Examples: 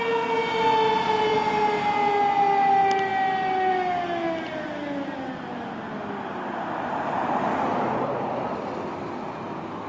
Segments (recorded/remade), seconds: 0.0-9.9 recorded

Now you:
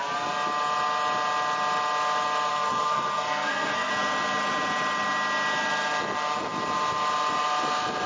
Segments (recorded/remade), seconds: 0.0-2.5 recorded; 2.5-3.9 remade; 3.9-8.1 recorded

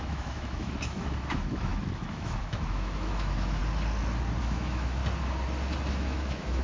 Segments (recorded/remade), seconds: 0.0-3.6 remade; 3.6-4.4 recorded; 4.4-5.0 remade; 5.0-5.9 recorded; 5.9-6.6 remade

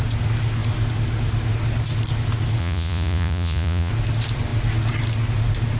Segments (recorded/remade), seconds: 0.0-2.6 recorded; 2.6-3.9 remade; 3.9-5.8 recorded